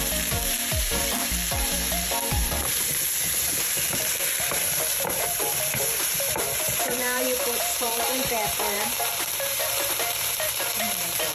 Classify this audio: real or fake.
fake